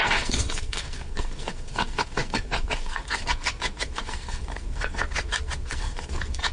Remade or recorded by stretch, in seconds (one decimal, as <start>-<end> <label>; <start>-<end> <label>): 0.0-6.5 remade